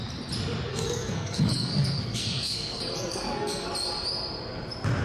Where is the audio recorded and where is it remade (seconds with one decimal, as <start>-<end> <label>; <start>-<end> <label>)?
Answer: 0.0-0.7 recorded; 0.7-3.7 remade; 3.7-5.0 recorded